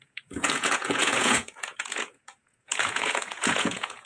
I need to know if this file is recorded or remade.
remade